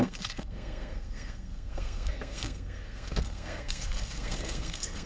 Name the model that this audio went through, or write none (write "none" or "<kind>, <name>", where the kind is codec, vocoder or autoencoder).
codec, SNAC